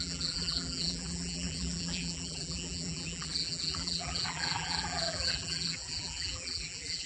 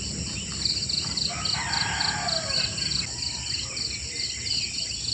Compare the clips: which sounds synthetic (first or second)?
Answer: first